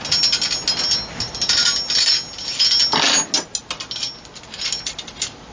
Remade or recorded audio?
recorded